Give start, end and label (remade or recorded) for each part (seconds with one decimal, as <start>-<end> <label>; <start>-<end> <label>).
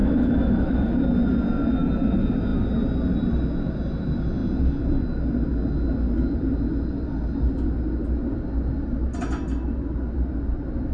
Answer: 0.0-0.9 remade; 0.9-10.9 recorded